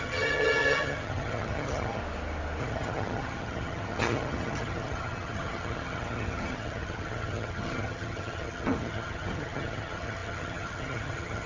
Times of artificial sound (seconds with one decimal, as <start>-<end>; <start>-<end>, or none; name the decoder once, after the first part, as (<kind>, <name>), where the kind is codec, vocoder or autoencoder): 0.0-2.0 (vocoder, HiFi-GAN); 2.6-11.5